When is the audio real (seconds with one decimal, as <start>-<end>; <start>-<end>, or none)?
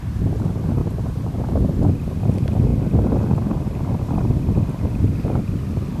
0.0-0.8; 1.5-6.0